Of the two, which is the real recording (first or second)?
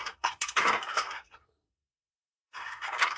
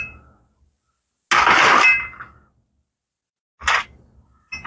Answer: second